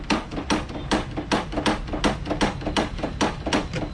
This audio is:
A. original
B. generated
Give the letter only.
B